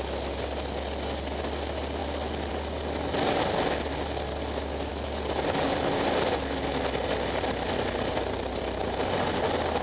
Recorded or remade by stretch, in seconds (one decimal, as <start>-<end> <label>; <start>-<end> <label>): 0.0-9.8 recorded